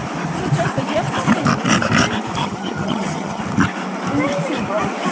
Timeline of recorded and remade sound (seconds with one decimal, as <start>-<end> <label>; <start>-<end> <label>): 0.0-2.4 recorded; 2.4-3.4 remade; 3.4-5.1 recorded